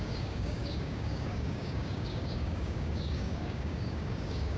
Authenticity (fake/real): fake